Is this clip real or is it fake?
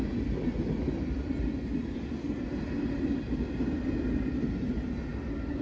real